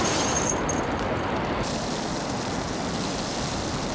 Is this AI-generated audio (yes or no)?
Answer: no